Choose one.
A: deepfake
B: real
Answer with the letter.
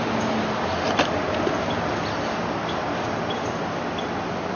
B